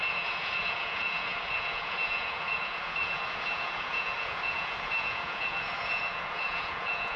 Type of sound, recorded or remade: remade